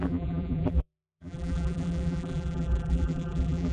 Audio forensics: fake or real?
fake